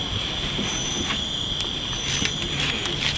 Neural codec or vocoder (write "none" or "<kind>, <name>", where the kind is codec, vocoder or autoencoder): none